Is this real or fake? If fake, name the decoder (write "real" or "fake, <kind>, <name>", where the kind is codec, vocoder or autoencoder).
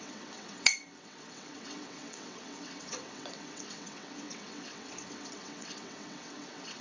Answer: fake, vocoder, WaveNeXt